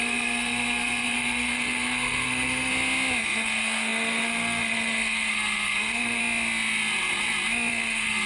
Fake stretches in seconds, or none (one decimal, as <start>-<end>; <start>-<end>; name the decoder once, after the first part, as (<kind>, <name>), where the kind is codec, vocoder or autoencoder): 0.0-2.7 (codec, SNAC); 3.2-6.2; 7.7-8.3